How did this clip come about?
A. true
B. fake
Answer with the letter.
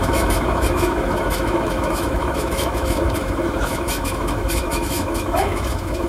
B